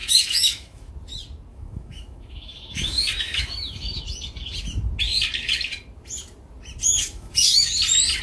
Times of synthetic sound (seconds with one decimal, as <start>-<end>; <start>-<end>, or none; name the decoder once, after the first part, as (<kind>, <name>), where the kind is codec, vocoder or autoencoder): 0.0-0.9 (autoencoder, DAC-VAE); 1.5-4.0; 7.0-7.7